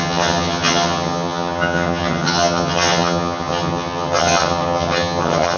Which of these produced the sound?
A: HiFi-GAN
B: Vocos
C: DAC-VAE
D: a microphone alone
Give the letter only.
A